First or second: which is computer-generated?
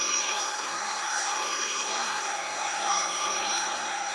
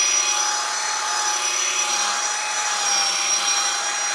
first